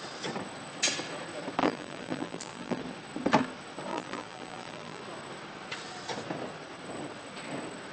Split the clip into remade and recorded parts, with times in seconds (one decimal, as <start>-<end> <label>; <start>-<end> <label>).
0.0-1.6 recorded; 1.6-2.8 remade; 2.8-3.9 recorded; 3.9-5.0 remade; 5.0-7.9 recorded